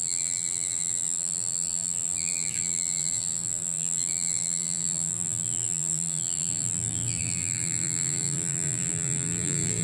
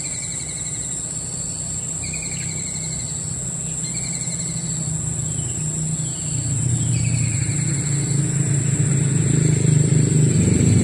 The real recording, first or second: second